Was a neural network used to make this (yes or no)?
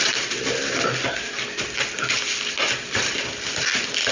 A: no